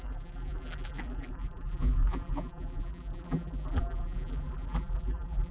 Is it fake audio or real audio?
fake